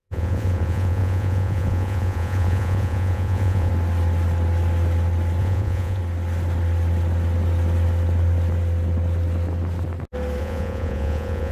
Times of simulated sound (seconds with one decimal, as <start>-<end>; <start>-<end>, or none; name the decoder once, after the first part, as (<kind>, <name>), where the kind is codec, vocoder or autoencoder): 0.0-3.7 (vocoder, Vocos); 5.4-6.0; 10.4-11.5